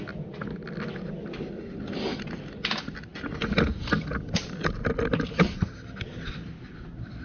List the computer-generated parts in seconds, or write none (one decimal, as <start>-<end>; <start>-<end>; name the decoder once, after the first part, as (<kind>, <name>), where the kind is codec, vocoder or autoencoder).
none

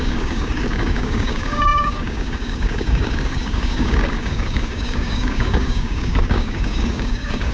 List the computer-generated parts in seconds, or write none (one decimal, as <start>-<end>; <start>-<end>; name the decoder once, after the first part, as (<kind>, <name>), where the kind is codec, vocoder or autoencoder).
0.0-7.5 (codec, DAC)